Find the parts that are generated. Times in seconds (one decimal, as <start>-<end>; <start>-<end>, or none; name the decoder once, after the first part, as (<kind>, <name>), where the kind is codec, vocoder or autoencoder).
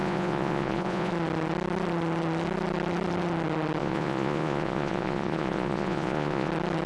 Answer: 0.0-1.1 (vocoder, Vocos); 3.8-6.5